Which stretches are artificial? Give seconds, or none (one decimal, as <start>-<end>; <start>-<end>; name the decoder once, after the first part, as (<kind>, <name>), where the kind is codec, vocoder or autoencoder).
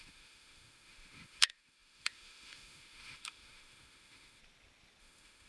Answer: 0.0-4.4 (autoencoder, DAC-VAE); 5.0-5.5